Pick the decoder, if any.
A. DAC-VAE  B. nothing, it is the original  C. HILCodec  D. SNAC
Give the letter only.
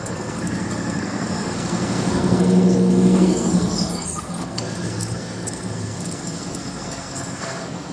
D